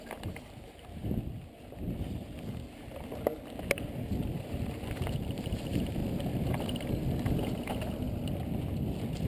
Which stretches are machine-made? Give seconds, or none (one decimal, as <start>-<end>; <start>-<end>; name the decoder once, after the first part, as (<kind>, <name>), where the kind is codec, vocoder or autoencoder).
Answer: 0.0-1.0 (vocoder, BigVGAN v2); 4.7-6.0

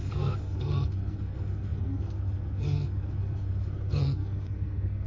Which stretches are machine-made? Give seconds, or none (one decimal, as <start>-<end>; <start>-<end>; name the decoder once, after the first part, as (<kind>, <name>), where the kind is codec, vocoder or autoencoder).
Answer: 0.0-5.1 (codec, SNAC)

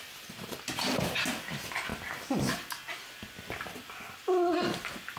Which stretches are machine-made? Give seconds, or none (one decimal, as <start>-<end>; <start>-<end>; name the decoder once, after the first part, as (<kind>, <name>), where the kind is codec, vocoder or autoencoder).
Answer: none

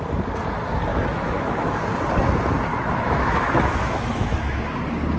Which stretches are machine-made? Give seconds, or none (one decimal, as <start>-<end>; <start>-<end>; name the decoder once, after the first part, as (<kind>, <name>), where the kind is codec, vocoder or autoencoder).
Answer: 0.9-1.8 (autoencoder, DAC-VAE); 2.7-4.6

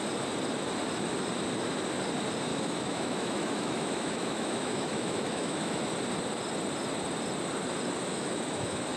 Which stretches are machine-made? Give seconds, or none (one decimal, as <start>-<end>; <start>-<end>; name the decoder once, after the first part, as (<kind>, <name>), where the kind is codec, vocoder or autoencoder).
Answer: 2.5-5.9 (autoencoder, DAC-VAE); 8.1-9.0

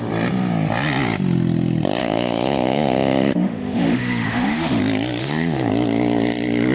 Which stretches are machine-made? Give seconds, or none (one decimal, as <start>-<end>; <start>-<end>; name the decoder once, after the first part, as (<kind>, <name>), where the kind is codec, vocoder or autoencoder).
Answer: 2.0-4.8 (autoencoder, DAC-VAE); 5.2-5.7

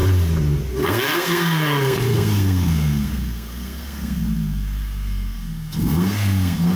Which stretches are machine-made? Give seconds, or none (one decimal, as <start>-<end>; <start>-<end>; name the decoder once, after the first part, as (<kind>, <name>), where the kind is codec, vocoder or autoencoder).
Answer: 0.7-6.8 (codec, SNAC)